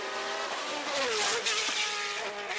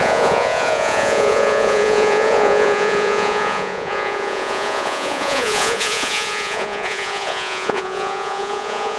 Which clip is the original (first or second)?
first